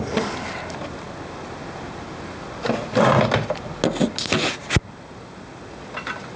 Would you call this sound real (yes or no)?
yes